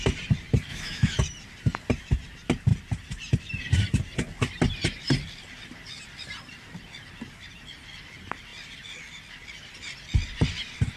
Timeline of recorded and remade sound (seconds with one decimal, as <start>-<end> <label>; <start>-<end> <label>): 0.0-0.7 recorded; 0.7-1.2 remade; 1.2-11.0 recorded